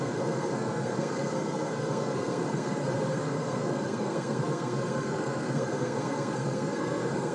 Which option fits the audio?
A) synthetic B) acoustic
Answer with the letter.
A